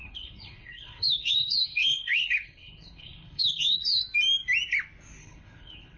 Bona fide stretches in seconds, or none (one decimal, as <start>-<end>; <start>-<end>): 4.0-5.2